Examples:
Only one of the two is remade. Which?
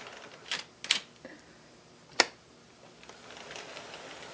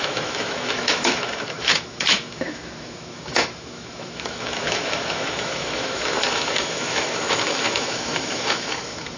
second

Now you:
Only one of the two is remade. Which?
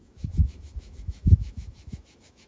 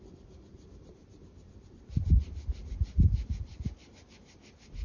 first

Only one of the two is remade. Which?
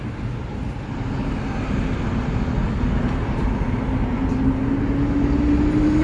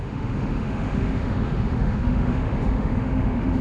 second